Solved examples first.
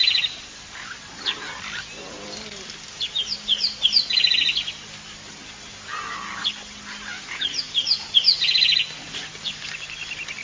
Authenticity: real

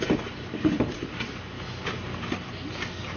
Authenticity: real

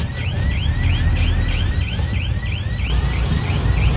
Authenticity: real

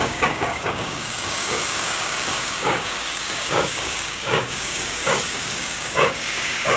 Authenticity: fake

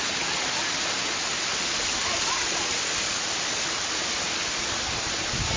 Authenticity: real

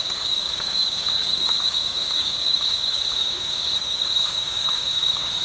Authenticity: fake